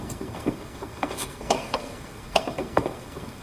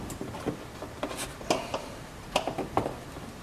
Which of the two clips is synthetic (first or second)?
first